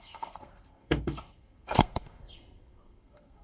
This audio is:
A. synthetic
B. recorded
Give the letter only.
A